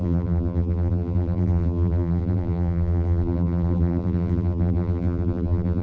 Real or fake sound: fake